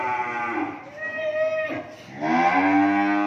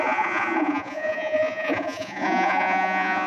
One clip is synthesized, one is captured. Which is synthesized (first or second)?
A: second